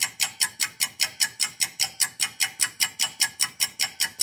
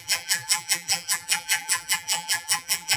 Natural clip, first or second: first